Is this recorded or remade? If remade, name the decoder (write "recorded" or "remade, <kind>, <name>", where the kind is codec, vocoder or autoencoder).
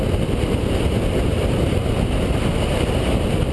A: recorded